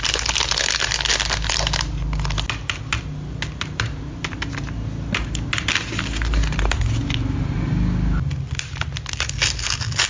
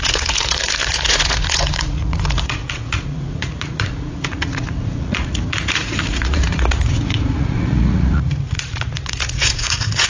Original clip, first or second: first